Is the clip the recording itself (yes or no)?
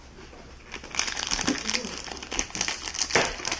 yes